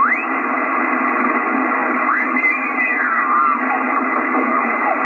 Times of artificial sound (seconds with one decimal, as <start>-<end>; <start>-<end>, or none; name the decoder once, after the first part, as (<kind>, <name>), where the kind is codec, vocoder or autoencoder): 1.8-5.0 (codec, DAC)